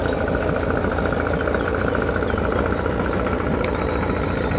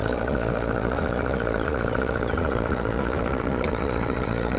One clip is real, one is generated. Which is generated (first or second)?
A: second